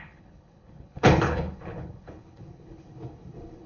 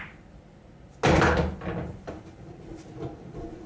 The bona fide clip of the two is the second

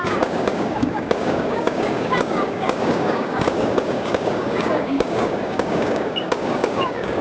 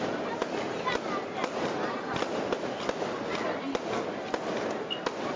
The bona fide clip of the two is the second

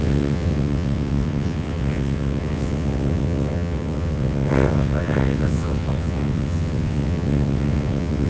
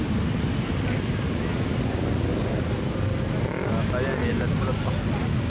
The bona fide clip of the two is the second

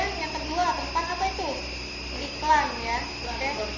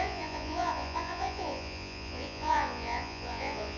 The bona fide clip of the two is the first